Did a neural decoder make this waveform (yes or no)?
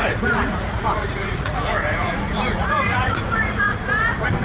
yes